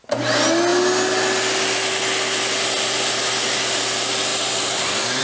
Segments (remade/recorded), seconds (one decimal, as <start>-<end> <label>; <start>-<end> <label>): 0.0-5.2 recorded